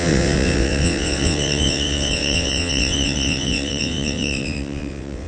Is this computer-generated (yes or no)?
yes